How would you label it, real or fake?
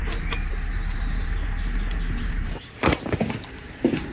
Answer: fake